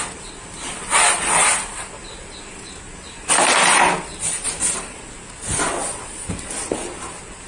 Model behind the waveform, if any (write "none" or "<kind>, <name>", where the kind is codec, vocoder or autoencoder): none